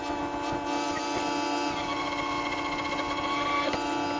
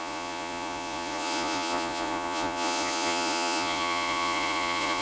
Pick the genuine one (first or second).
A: first